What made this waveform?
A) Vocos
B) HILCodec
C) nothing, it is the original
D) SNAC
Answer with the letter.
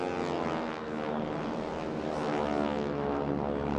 C